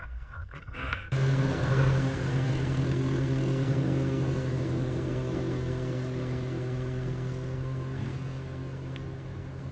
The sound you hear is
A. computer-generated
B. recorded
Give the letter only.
A